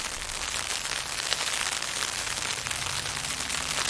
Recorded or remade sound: recorded